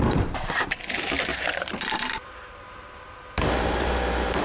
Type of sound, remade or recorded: remade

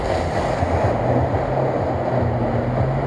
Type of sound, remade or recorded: recorded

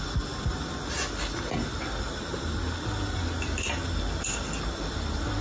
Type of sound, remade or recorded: recorded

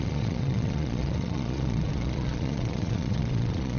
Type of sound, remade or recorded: remade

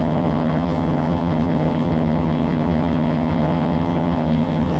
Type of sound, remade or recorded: remade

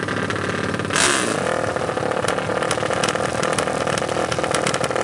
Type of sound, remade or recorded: recorded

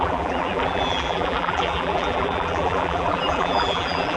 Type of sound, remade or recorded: remade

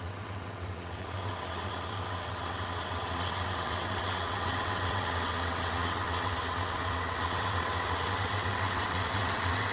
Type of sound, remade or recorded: remade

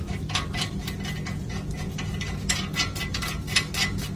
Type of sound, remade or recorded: recorded